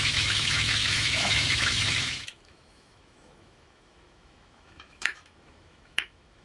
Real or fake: fake